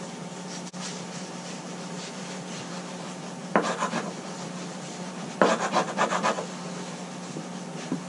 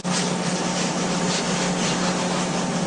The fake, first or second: first